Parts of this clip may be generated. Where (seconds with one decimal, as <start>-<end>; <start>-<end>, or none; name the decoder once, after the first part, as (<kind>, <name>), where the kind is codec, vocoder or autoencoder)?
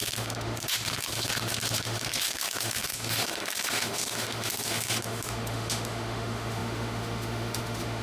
0.0-8.0 (autoencoder, DAC-VAE)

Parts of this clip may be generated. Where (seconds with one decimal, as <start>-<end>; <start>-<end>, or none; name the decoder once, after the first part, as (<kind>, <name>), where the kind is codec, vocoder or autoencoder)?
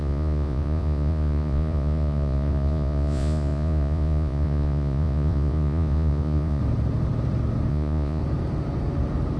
0.0-6.6 (vocoder, Vocos); 7.7-8.2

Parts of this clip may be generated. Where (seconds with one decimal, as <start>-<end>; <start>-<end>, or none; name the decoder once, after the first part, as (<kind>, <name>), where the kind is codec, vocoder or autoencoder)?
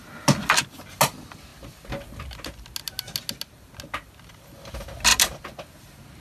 none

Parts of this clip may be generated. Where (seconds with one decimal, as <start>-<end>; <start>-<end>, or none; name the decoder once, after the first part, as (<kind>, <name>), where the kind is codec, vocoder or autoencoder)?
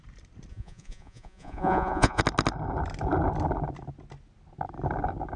0.5-2.2 (vocoder, Vocos)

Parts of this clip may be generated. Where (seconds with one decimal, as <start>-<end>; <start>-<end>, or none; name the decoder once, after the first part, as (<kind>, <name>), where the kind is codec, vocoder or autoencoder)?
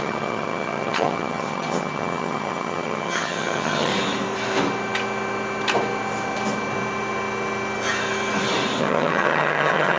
0.0-3.9 (vocoder, HiFi-GAN); 8.8-10.0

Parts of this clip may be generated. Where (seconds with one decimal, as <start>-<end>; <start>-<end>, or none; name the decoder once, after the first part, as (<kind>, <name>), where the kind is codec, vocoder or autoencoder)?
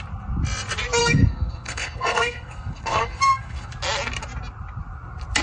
1.0-3.7 (codec, SNAC)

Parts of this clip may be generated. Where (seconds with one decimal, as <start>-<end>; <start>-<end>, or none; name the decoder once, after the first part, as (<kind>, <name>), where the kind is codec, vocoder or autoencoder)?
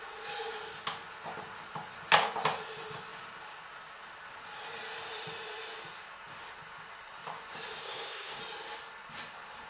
7.8-8.4 (codec, SNAC)